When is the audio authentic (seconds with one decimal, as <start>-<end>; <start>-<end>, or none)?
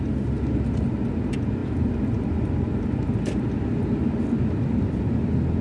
0.0-1.6; 5.0-5.6